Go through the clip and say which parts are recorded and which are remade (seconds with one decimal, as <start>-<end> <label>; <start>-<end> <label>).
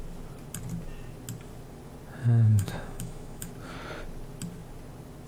0.0-2.2 recorded; 2.2-3.5 remade; 3.5-5.3 recorded